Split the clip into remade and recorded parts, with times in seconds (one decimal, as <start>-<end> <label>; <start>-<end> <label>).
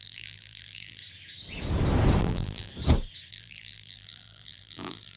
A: 0.0-1.0 remade; 1.0-2.2 recorded; 2.2-2.7 remade; 2.7-3.3 recorded; 3.3-5.2 remade